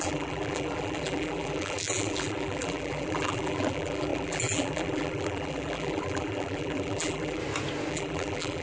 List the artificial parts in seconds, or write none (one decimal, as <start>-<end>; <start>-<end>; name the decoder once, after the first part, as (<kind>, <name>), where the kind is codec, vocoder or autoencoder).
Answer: 0.0-7.4 (vocoder, BigVGAN v2); 7.9-8.6